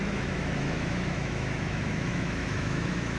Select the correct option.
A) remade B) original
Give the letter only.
A